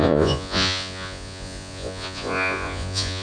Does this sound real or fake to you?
fake